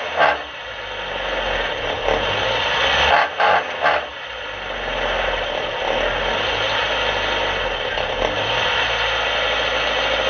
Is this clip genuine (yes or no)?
yes